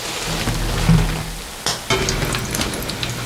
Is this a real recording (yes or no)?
yes